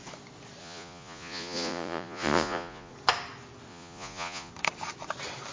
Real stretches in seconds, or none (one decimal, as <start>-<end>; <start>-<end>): 0.0-0.6; 2.9-3.7; 4.5-5.5